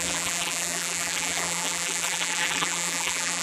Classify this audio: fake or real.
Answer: fake